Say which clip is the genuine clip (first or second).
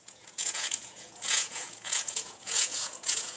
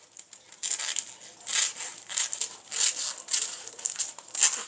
second